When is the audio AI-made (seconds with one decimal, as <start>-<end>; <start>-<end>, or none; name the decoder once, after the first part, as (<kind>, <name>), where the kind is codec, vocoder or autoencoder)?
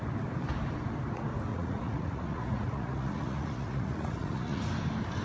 1.5-4.6 (vocoder, Vocos)